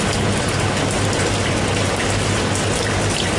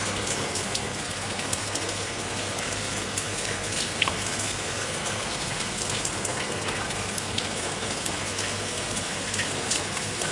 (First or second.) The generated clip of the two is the second